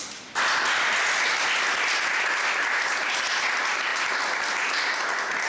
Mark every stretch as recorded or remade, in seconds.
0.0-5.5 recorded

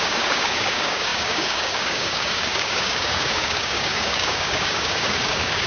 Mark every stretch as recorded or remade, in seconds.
0.0-5.7 remade

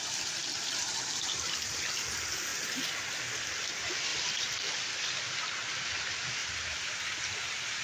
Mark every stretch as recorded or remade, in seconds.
0.0-2.5 recorded; 2.5-3.1 remade; 3.1-4.1 recorded; 4.1-4.6 remade; 4.6-6.4 recorded; 6.4-7.2 remade; 7.2-7.8 recorded

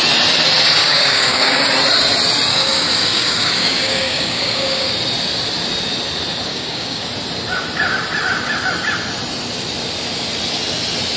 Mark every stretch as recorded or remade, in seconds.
0.0-0.8 recorded; 0.8-1.6 remade; 1.6-2.5 recorded; 2.5-4.9 remade; 4.9-6.5 recorded; 6.5-7.0 remade; 7.0-11.2 recorded

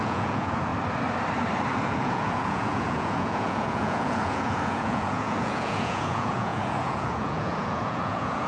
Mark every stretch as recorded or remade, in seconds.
0.0-0.7 remade; 0.7-1.8 recorded; 1.8-8.5 remade

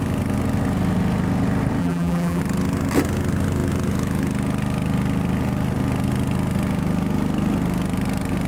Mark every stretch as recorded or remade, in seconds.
0.0-1.8 recorded; 1.8-2.4 remade; 2.4-8.5 recorded

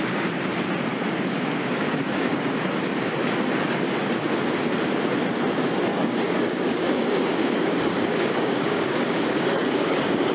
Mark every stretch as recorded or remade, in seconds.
0.0-0.9 recorded; 0.9-2.8 remade; 2.8-5.9 recorded; 5.9-10.3 remade

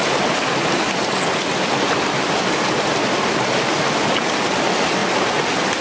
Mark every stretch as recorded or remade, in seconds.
0.0-5.8 recorded